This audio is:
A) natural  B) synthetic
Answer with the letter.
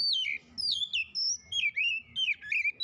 A